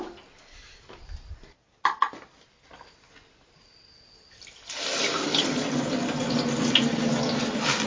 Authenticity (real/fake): real